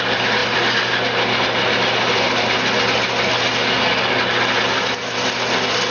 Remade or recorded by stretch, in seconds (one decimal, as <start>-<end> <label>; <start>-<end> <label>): 0.0-5.9 recorded